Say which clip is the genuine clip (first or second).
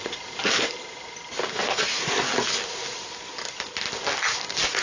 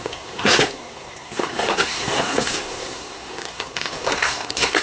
first